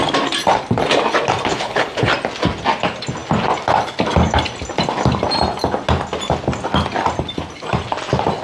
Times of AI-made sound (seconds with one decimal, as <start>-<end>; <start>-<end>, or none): 1.5-2.1